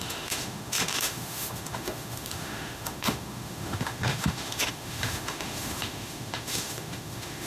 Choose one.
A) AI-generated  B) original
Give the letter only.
A